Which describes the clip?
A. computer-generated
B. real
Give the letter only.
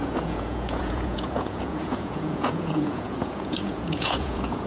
A